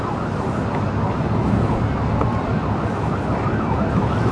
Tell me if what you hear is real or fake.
real